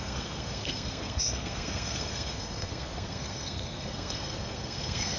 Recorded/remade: remade